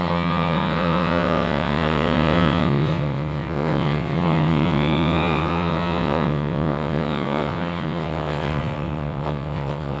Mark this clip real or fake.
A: fake